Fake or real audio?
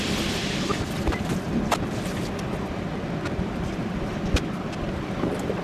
real